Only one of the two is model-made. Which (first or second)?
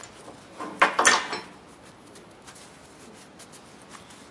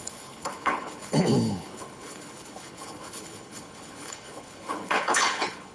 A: second